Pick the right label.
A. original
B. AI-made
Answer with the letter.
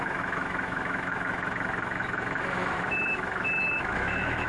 B